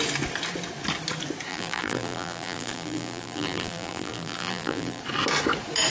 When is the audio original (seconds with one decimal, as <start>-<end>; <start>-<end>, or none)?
0.0-1.5; 5.0-5.9